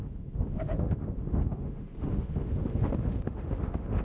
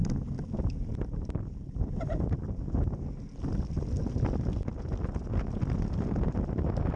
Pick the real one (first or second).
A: second